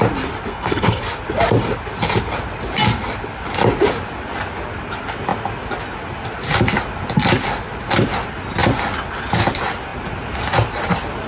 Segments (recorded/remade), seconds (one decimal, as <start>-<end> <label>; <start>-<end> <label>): 0.0-0.5 recorded; 0.5-1.0 remade; 1.0-11.3 recorded